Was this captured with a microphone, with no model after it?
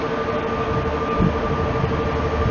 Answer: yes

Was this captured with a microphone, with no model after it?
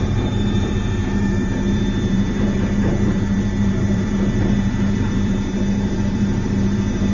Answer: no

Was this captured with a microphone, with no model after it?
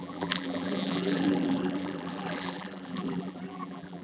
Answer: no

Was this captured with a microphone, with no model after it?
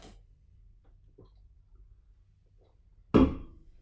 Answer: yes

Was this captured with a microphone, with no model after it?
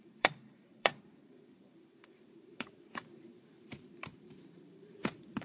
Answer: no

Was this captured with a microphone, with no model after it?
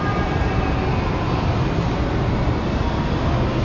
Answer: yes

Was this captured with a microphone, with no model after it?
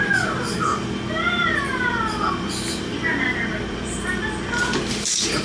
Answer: no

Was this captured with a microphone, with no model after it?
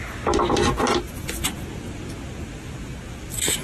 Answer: yes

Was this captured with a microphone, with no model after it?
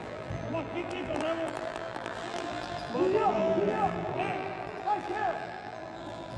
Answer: no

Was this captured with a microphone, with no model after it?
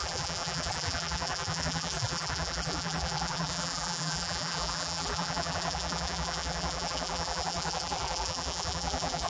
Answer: no